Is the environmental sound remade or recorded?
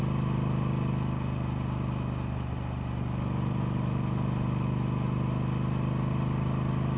recorded